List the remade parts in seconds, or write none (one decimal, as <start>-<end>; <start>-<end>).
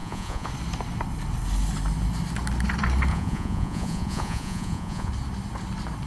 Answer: 0.0-0.5; 3.1-5.1